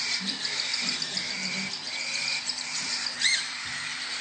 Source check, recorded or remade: remade